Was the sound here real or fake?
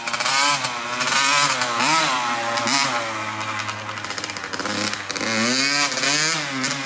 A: real